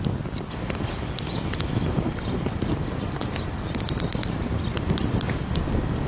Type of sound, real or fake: real